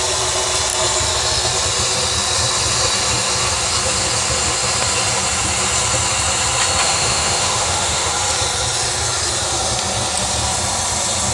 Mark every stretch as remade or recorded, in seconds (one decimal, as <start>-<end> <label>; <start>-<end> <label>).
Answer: 0.0-6.8 recorded; 6.8-8.1 remade; 8.1-11.3 recorded